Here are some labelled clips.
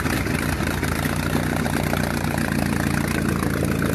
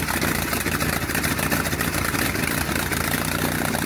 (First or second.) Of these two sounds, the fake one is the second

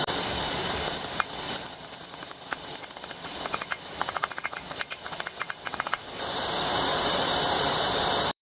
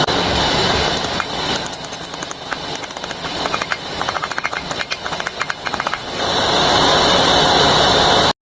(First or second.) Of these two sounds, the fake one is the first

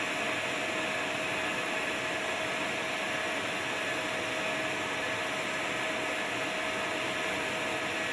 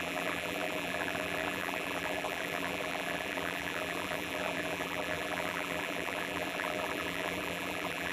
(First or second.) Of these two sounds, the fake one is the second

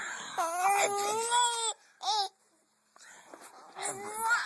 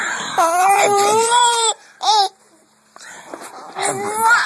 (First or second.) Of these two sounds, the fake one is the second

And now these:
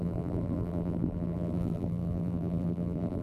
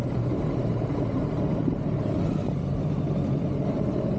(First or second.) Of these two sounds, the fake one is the first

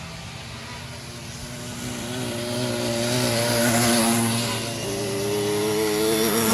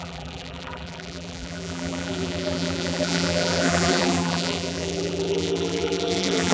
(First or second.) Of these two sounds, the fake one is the second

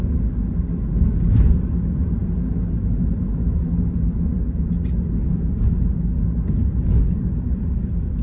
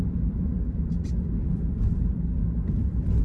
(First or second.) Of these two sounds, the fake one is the second